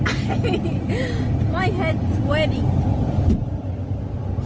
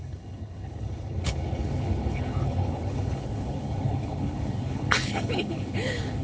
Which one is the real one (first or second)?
first